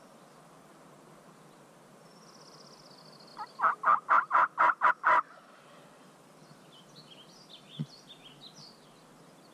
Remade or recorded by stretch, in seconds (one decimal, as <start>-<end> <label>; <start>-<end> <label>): 0.0-9.5 recorded